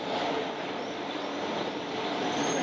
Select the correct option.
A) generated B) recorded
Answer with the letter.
B